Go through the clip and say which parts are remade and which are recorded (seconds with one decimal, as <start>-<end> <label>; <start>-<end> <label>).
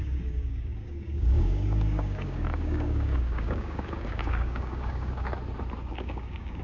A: 0.0-5.3 remade; 5.3-5.9 recorded; 5.9-6.6 remade